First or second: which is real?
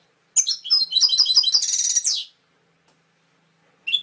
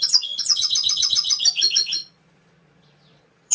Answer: first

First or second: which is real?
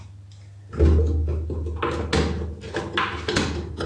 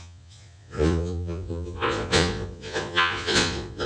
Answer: first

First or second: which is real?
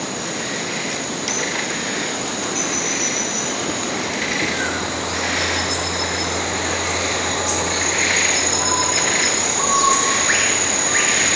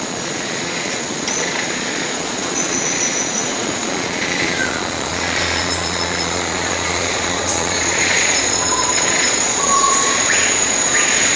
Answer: first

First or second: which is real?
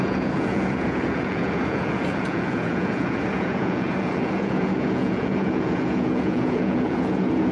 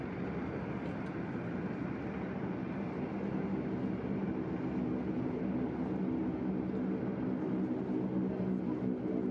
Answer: second